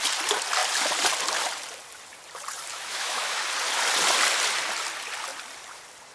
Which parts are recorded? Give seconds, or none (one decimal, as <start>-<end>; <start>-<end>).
0.0-2.7; 3.4-6.1